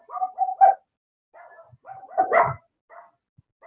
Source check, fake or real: real